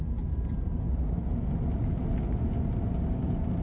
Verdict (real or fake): real